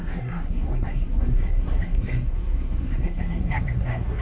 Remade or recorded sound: remade